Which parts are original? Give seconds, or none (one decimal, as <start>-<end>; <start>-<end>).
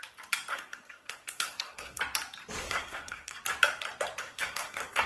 0.0-0.5; 2.0-2.6; 3.4-4.2